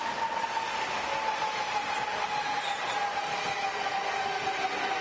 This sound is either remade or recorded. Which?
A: recorded